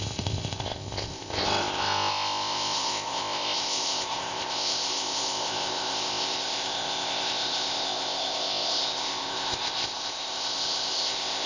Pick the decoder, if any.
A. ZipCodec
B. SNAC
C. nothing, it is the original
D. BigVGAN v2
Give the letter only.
A